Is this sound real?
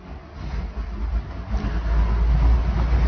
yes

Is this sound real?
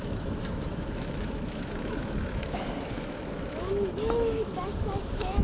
no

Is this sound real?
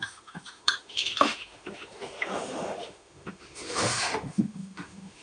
no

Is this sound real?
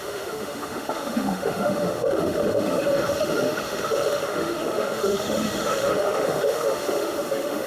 no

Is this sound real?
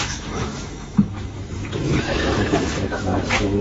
no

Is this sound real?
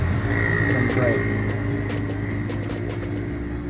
yes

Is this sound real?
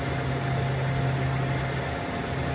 yes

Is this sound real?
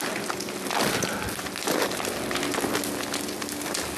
yes